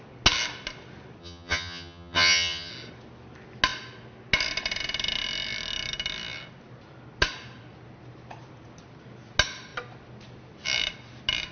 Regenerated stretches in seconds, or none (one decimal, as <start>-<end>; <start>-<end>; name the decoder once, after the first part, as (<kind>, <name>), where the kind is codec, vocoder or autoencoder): 1.2-2.7 (vocoder, HiFi-GAN)